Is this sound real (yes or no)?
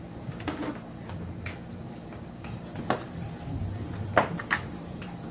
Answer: no